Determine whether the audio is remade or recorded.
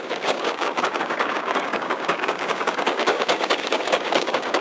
remade